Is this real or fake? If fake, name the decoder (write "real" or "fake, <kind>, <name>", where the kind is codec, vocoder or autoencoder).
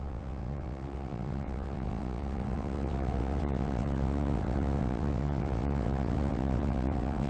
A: fake, vocoder, WaveNeXt